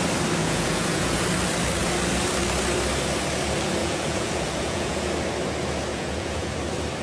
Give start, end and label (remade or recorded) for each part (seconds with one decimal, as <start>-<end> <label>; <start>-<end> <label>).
0.0-0.4 recorded; 0.4-1.2 remade; 1.2-3.8 recorded; 3.8-5.1 remade; 5.1-5.9 recorded; 5.9-6.5 remade; 6.5-7.0 recorded